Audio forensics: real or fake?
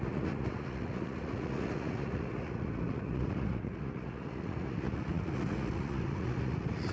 fake